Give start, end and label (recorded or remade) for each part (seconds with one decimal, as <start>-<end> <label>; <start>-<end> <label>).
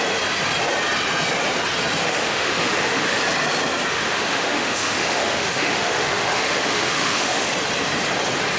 0.0-2.0 recorded; 2.0-3.2 remade; 3.2-3.9 recorded; 3.9-7.5 remade; 7.5-8.6 recorded